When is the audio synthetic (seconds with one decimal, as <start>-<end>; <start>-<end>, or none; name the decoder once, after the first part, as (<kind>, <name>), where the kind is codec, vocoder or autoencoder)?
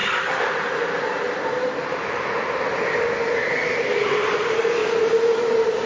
none